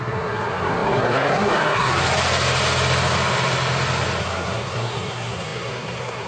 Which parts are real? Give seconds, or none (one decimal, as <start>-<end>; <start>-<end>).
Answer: 1.9-4.2